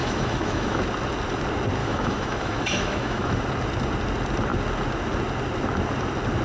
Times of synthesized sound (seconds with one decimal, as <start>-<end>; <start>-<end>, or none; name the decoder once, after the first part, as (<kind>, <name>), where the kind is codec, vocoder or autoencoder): 0.0-0.8 (autoencoder, DAC-VAE); 1.8-3.4